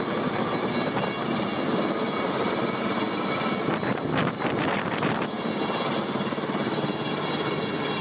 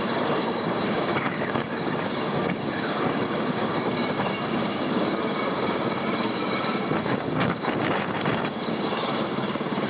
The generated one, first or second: second